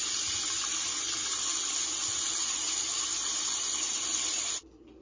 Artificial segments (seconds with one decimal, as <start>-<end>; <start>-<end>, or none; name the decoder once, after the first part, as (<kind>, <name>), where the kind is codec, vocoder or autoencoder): none